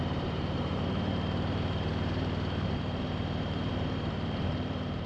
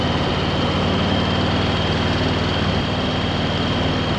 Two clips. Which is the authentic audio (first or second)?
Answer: second